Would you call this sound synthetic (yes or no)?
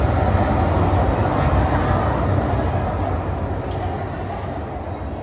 no